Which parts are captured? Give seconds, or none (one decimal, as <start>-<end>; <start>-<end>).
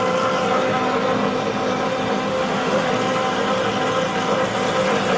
0.0-2.3; 2.9-5.2